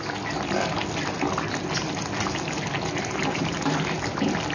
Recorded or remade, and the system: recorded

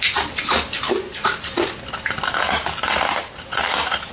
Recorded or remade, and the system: recorded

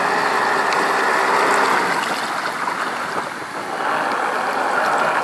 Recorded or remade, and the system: recorded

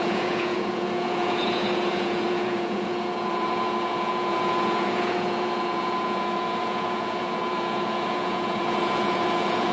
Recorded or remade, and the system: remade, vocoder, Vocos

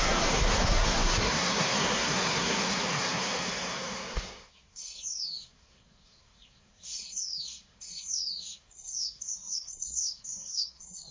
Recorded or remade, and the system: remade, codec, SNAC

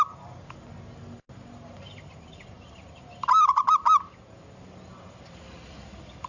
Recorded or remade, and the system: recorded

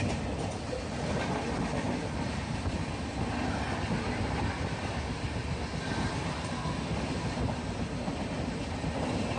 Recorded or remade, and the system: recorded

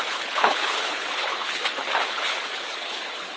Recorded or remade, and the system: remade, codec, HILCodec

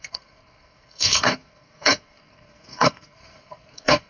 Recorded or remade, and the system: remade, codec, SNAC